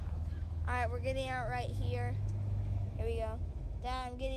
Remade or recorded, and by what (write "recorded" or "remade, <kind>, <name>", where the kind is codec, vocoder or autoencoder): remade, autoencoder, DAC-VAE